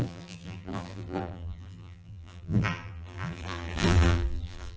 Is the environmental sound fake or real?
fake